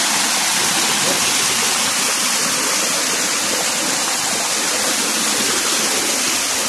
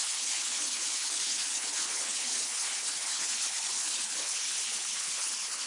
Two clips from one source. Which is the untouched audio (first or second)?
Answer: first